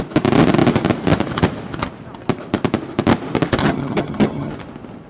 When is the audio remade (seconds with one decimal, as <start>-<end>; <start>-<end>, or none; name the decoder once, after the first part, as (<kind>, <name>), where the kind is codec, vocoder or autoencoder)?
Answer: 3.6-4.5 (vocoder, HiFi-GAN)